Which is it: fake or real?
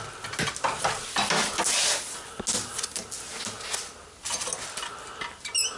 real